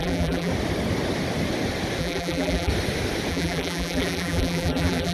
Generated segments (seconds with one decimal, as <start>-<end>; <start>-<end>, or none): 0.0-0.5; 2.0-2.7; 3.3-5.1